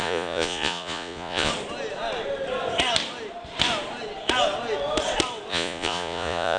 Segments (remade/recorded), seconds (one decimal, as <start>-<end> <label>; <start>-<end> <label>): 0.0-1.5 remade; 1.5-5.5 recorded; 5.5-6.6 remade